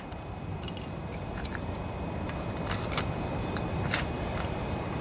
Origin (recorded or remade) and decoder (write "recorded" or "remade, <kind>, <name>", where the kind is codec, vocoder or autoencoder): remade, vocoder, BigVGAN v2